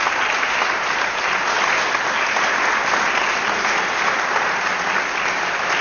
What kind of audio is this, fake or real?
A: real